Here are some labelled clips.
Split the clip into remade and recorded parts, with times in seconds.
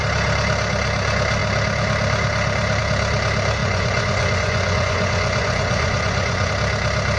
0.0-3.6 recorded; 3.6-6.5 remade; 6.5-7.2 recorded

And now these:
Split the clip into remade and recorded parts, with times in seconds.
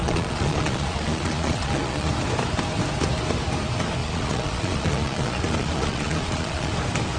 0.0-2.1 remade; 2.1-4.0 recorded; 4.0-6.7 remade; 6.7-7.2 recorded